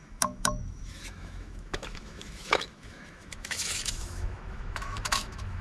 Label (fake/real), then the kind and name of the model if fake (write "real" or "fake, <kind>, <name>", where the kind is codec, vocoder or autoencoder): fake, autoencoder, DAC-VAE